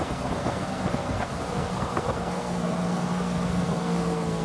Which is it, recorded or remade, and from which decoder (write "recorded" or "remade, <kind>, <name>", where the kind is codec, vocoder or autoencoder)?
remade, codec, SNAC